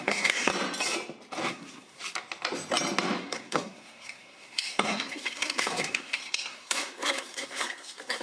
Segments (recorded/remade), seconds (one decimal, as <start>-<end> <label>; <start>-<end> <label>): 0.0-0.5 remade; 0.5-1.5 recorded; 1.5-2.0 remade; 2.0-3.2 recorded; 3.2-8.2 remade